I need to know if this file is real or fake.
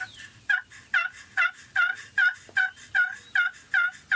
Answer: real